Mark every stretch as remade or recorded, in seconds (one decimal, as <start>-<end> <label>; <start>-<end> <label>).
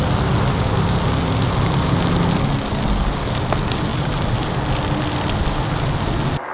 0.0-3.9 recorded; 3.9-4.5 remade; 4.5-6.5 recorded